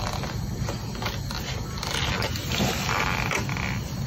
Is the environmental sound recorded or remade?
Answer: recorded